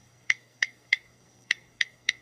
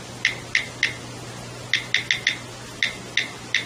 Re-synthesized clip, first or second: first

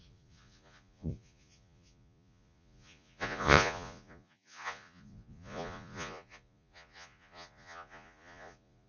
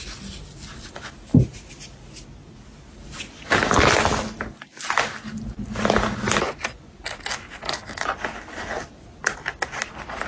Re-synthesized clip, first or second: first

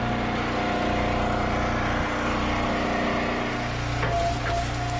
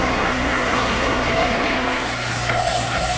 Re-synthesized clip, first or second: second